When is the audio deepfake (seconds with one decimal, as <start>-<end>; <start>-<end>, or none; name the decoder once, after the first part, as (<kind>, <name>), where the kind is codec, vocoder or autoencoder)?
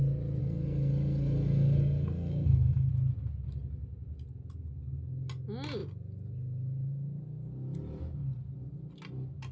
0.4-2.9 (codec, SNAC)